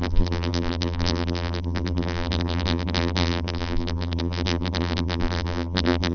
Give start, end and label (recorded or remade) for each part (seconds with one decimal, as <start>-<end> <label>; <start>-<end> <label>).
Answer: 0.0-6.1 remade